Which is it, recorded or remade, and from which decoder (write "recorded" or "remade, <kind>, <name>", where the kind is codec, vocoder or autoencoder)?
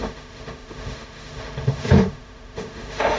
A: remade, autoencoder, DAC-VAE